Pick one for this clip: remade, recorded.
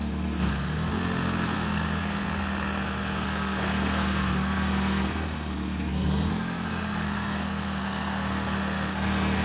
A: remade